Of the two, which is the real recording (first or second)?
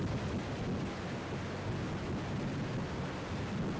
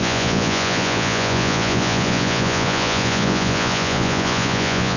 first